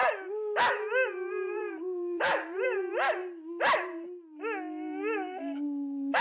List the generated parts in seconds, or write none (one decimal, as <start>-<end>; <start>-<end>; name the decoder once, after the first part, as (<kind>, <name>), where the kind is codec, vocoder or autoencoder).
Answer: 1.3-3.2 (vocoder, BigVGAN v2)